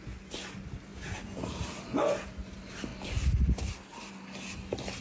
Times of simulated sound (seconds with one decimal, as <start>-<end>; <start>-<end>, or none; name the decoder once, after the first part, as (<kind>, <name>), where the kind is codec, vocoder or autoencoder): none